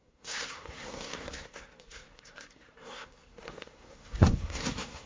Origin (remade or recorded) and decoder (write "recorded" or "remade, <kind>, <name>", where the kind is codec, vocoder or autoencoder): remade, codec, SNAC